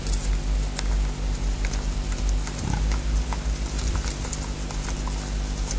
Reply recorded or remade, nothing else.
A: recorded